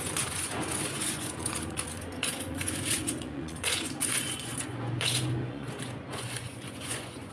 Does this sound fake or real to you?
fake